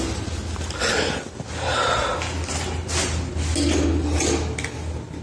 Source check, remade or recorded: recorded